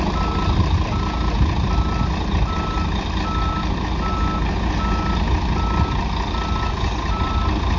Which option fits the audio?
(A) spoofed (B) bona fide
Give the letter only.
B